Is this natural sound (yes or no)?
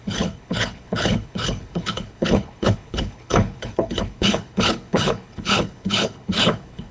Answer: no